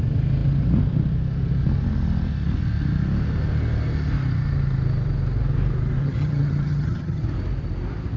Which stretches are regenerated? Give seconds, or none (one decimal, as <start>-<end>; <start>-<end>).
6.0-7.2